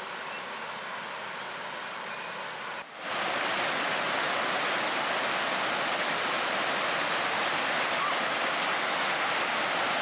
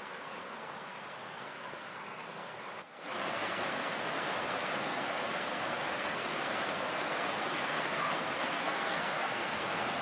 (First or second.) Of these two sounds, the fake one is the second